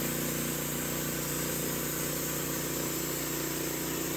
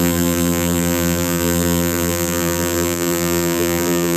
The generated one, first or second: second